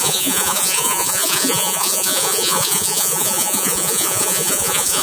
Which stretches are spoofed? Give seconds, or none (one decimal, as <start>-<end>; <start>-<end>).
0.0-5.0